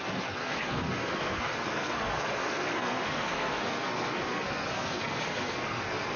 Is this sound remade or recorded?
remade